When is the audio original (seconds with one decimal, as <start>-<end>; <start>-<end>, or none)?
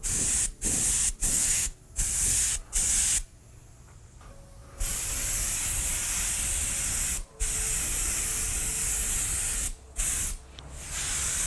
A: 0.0-1.3; 1.8-11.5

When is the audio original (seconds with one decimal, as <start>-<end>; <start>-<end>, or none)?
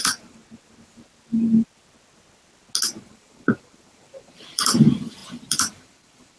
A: 0.4-3.0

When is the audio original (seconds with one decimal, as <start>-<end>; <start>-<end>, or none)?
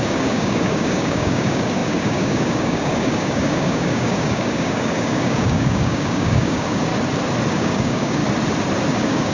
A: 6.9-7.5; 8.2-8.9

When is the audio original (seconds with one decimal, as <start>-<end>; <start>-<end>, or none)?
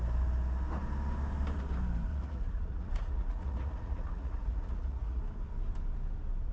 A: 0.0-2.1; 5.2-6.5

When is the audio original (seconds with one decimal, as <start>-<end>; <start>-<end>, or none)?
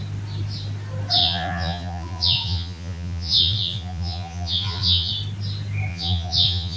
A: 0.0-1.2; 5.1-5.9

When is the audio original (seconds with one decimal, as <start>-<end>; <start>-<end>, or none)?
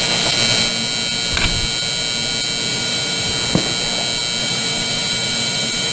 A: 0.0-2.7; 3.3-4.4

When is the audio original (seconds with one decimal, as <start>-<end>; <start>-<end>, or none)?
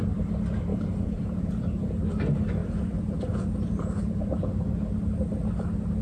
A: 0.0-0.7; 2.0-2.6; 4.5-6.0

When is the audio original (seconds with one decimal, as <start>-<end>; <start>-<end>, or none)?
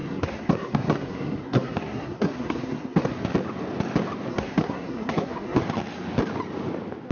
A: 3.1-4.3; 5.6-7.1